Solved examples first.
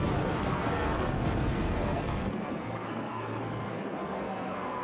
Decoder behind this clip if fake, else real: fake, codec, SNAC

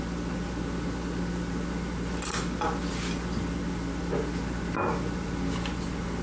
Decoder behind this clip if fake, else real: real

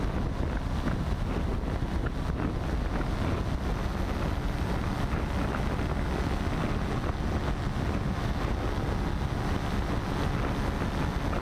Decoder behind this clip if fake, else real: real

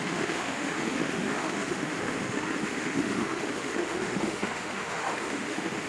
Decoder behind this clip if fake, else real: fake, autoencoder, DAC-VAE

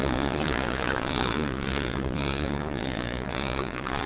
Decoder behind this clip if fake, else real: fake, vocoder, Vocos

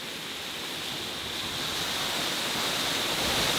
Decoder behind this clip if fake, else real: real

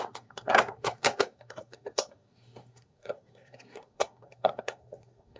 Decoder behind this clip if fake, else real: fake, codec, SNAC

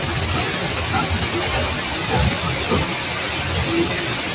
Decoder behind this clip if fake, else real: real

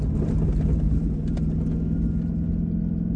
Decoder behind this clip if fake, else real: real